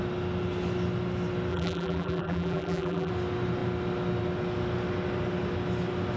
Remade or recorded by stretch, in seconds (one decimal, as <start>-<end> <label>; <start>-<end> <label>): 0.0-1.5 recorded; 1.5-3.1 remade; 3.1-6.2 recorded